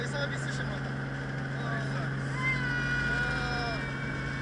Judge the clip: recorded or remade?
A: recorded